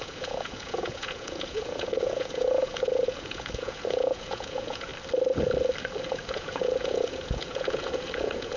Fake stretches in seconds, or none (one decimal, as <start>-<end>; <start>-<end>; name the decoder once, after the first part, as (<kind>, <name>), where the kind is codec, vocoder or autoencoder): 0.0-4.9 (vocoder, Vocos); 6.1-8.6